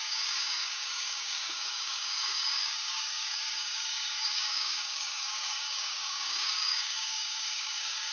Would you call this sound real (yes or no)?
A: no